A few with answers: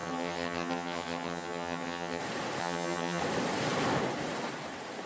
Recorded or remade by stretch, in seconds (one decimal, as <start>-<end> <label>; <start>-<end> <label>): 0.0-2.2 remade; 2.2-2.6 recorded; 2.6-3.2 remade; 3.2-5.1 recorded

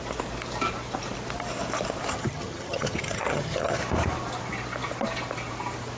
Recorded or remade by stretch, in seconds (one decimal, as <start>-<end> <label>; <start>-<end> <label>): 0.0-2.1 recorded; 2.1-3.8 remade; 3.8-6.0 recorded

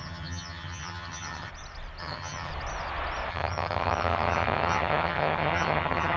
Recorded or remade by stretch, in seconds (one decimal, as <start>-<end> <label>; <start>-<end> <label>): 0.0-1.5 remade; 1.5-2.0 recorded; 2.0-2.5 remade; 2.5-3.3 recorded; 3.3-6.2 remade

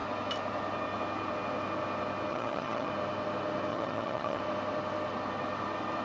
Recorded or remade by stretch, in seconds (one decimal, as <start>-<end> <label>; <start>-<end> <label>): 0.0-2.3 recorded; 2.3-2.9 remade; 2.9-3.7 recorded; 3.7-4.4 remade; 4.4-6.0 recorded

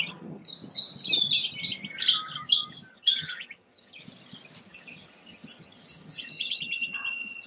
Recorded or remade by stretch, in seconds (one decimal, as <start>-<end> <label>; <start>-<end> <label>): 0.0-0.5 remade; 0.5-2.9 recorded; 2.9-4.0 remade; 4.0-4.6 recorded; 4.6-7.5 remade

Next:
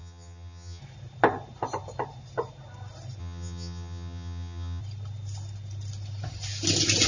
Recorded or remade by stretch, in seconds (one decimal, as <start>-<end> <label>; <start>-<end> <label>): 0.0-0.8 remade; 0.8-3.2 recorded; 3.2-4.8 remade; 4.8-7.1 recorded

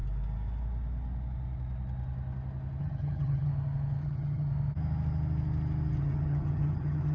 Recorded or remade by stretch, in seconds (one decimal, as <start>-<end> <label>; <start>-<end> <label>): 0.0-2.8 recorded; 2.8-3.5 remade; 3.5-4.0 recorded; 4.0-4.5 remade; 4.5-6.0 recorded; 6.0-7.1 remade

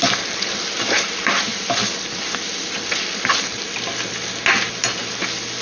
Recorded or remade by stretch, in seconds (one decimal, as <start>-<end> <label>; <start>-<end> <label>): 0.0-5.6 recorded